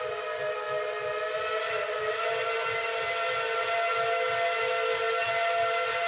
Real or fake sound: real